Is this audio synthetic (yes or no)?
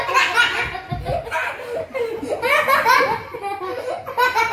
no